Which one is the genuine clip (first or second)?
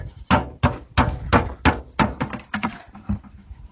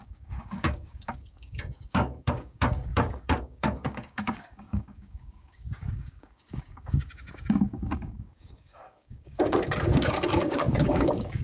first